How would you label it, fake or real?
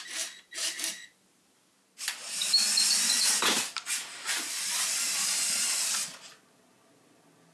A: real